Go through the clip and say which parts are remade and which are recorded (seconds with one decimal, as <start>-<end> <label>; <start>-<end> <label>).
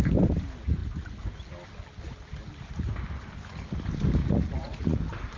0.0-4.2 recorded; 4.2-5.0 remade; 5.0-5.4 recorded